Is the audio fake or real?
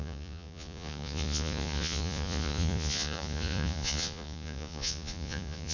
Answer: fake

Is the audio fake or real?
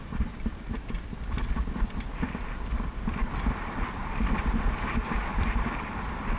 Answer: fake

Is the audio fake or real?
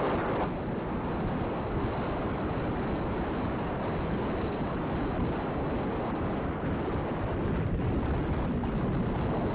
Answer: real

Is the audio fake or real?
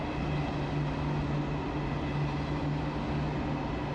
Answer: real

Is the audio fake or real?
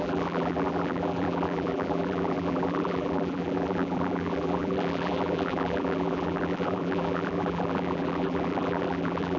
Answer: fake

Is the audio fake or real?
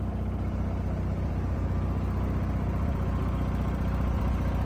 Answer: real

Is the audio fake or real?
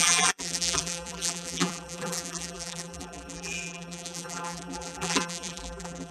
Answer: fake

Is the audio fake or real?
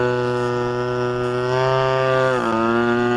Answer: real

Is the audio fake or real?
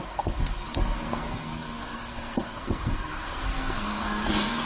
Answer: fake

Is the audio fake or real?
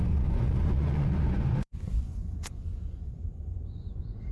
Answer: fake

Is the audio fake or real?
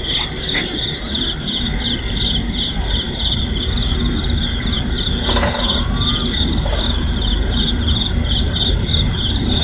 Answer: real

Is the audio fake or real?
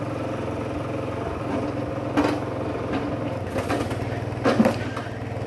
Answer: real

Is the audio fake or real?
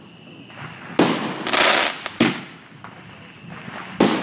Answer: real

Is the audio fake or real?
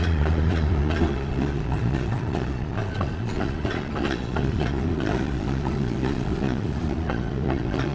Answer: fake